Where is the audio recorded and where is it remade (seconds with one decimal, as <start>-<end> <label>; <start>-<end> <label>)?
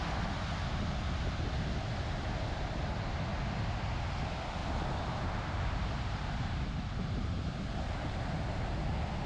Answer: 0.0-4.6 recorded; 4.6-7.6 remade; 7.6-9.3 recorded